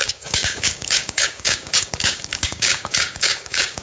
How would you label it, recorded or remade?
remade